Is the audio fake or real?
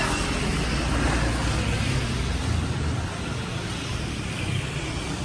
real